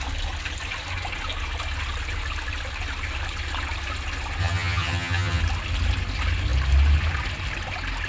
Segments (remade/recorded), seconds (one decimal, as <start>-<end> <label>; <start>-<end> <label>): 0.0-4.4 recorded; 4.4-5.4 remade; 5.4-8.1 recorded